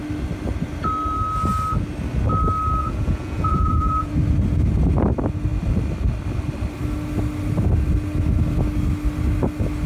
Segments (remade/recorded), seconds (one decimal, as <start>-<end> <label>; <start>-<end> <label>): 0.0-2.8 recorded; 2.8-4.1 remade; 4.1-9.9 recorded